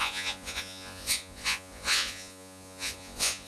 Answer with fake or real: fake